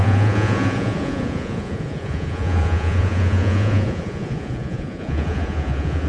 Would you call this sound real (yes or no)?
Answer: no